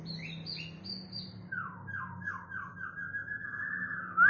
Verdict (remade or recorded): recorded